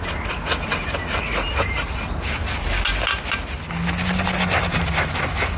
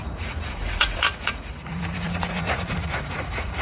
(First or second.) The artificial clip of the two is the second